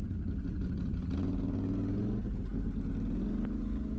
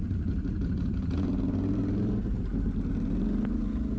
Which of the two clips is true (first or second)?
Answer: first